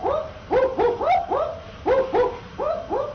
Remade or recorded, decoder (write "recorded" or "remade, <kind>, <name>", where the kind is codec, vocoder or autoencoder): recorded